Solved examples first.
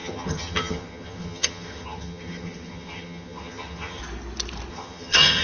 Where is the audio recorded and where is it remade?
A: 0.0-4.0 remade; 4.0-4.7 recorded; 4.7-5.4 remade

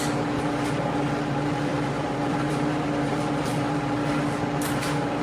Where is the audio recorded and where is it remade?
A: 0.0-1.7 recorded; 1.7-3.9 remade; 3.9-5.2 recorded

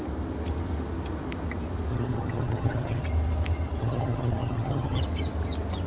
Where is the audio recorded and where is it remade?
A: 0.0-1.9 recorded; 1.9-3.0 remade; 3.0-3.8 recorded; 3.8-5.0 remade; 5.0-5.9 recorded

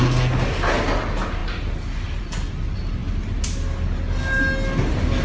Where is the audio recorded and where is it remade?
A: 0.0-5.2 recorded

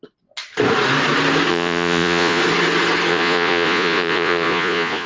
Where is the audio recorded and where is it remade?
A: 0.0-1.5 recorded; 1.5-2.4 remade; 2.4-3.1 recorded; 3.1-5.1 remade

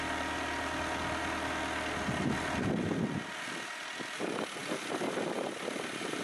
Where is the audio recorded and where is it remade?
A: 0.0-4.6 recorded; 4.6-6.2 remade